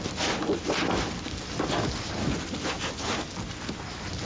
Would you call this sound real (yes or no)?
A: yes